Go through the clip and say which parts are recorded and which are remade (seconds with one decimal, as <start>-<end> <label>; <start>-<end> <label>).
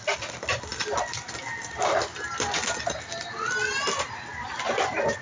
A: 0.0-4.3 recorded; 4.3-5.2 remade